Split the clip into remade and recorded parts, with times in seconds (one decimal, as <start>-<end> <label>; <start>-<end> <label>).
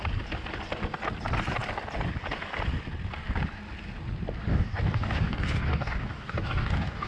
0.0-4.5 recorded; 4.5-7.1 remade